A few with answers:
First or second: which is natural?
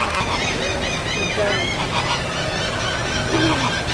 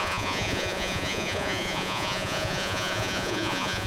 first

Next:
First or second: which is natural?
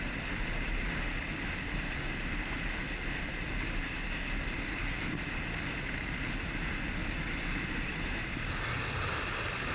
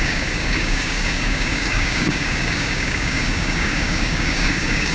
first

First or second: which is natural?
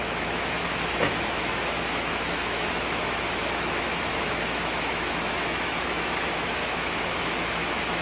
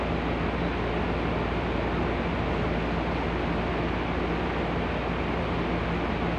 second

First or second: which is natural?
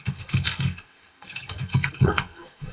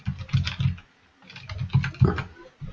second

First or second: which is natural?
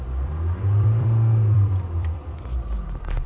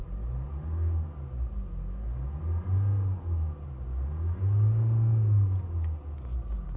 second